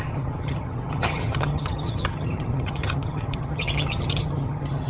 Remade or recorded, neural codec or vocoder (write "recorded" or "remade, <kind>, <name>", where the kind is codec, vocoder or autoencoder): remade, vocoder, HiFi-GAN